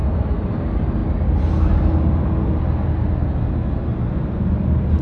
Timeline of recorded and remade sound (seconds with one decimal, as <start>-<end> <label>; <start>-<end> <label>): 0.0-5.0 recorded